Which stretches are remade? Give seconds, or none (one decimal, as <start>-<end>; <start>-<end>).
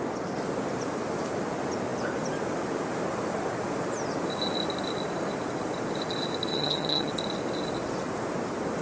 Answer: 6.5-7.1